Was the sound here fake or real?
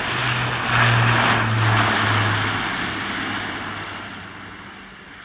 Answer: real